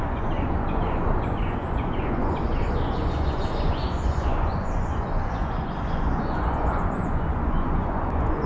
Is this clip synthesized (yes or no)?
yes